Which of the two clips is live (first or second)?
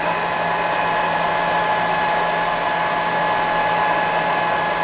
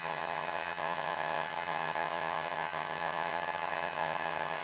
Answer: first